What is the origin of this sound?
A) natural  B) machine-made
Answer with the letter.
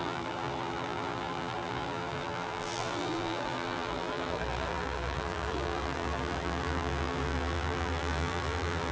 B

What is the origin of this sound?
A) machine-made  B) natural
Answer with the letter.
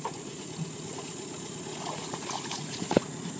A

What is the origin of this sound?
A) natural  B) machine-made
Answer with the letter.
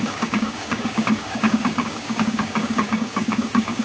B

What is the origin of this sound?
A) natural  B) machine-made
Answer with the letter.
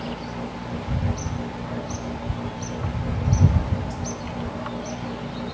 A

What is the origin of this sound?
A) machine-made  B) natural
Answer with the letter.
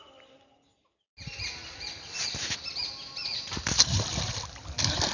B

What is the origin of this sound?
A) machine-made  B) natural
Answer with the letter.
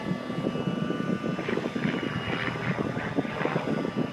B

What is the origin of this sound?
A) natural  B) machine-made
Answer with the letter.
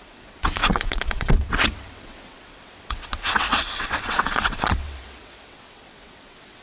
B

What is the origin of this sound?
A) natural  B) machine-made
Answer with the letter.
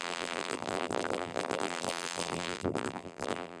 B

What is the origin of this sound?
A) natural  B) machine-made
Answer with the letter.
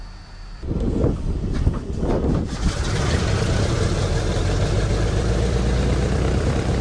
B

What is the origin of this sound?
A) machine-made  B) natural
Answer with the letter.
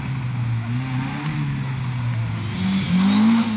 B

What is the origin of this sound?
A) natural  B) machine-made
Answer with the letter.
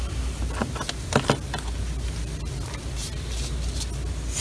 A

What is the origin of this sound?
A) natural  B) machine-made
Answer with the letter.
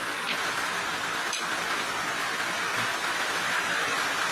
A